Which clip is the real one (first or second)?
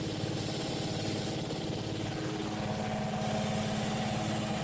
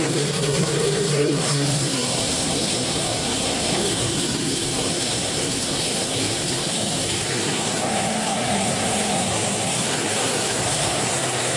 first